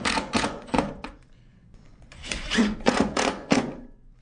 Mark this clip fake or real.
fake